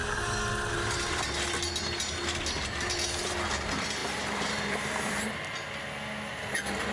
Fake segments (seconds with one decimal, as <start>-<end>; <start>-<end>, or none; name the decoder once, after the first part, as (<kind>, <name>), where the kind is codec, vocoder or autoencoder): 0.0-0.5 (vocoder, BigVGAN v2); 4.0-5.2